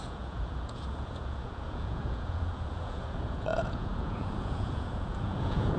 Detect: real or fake fake